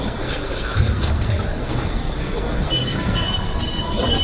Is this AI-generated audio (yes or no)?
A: yes